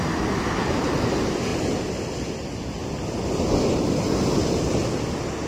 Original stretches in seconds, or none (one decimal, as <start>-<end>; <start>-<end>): 0.0-5.5